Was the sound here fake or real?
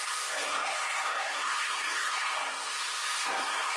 fake